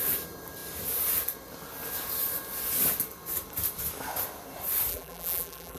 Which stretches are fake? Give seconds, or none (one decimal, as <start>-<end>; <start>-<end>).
4.9-5.8